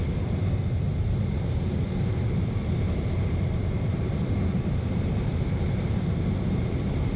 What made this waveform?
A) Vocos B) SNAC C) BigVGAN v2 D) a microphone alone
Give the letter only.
C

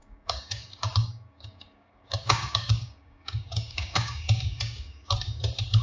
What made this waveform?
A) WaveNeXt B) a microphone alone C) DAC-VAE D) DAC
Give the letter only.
D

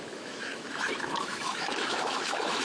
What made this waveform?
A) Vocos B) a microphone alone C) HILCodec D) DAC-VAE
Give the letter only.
D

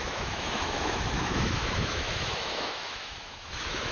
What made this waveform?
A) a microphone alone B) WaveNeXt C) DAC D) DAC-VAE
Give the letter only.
D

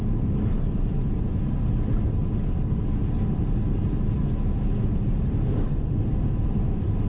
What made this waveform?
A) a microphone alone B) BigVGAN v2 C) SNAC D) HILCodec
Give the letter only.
A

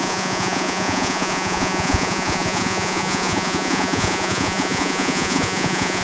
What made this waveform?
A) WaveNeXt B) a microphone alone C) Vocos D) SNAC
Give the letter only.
C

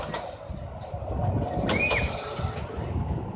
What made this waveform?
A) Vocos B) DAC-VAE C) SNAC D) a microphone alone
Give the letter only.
D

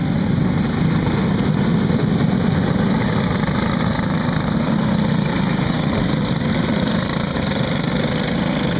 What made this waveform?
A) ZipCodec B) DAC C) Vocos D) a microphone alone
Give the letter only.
D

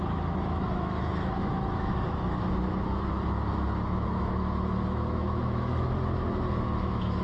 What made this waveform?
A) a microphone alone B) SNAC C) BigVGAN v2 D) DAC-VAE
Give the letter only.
D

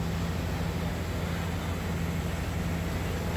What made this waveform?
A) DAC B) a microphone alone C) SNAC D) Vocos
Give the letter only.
B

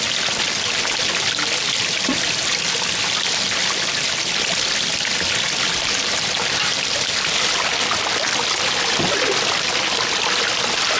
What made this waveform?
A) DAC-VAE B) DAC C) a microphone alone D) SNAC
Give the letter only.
C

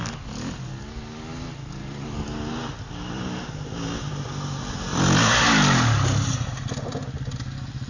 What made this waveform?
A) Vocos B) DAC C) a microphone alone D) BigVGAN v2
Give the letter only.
C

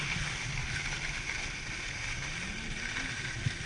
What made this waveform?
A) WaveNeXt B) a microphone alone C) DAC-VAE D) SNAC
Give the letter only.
B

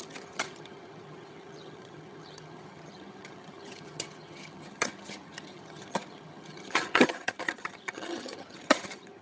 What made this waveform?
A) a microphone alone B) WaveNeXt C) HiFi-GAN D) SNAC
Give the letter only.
C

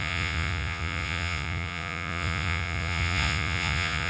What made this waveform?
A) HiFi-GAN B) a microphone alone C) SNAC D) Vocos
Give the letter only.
D